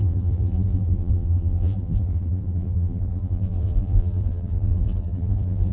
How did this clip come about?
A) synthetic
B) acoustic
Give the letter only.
A